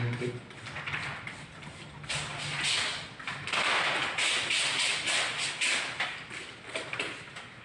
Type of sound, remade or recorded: recorded